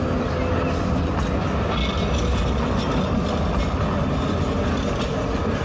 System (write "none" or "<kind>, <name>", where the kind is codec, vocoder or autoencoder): none